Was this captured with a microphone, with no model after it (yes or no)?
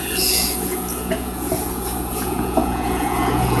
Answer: no